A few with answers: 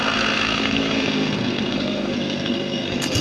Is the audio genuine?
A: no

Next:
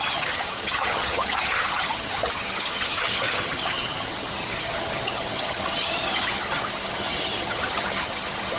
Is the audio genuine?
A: no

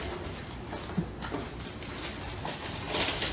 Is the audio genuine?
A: yes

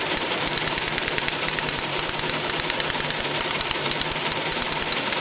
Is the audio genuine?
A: no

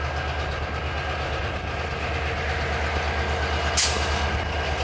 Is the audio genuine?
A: yes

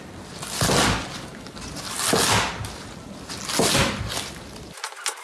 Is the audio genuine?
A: yes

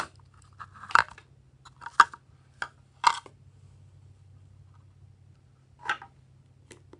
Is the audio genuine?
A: yes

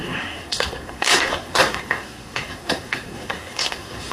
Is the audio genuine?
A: no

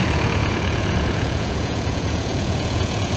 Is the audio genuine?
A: no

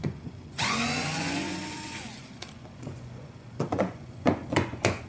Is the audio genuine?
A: no